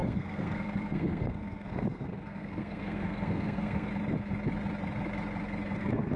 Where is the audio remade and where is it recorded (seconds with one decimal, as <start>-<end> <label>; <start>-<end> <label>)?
0.0-3.9 remade; 3.9-5.8 recorded; 5.8-6.2 remade